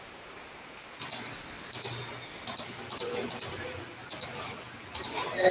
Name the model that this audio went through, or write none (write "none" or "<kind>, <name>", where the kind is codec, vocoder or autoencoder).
none